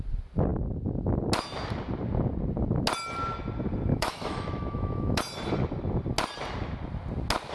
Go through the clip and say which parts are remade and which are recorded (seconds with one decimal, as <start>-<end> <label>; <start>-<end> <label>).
0.0-3.9 recorded; 3.9-5.2 remade; 5.2-7.5 recorded